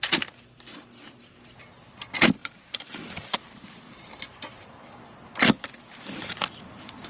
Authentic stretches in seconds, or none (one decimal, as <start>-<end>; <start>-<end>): 0.0-2.4; 4.9-7.1